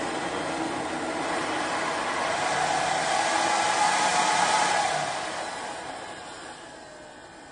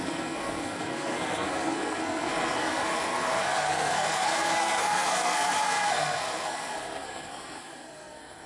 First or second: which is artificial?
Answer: second